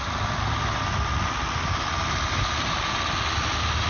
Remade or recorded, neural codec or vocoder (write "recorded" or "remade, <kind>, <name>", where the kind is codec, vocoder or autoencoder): recorded